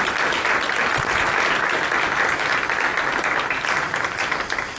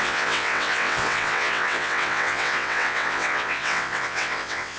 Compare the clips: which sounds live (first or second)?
first